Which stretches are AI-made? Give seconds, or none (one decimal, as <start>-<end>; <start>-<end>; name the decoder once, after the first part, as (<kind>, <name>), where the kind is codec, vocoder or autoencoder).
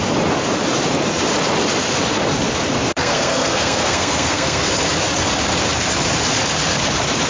2.9-4.7 (codec, SNAC)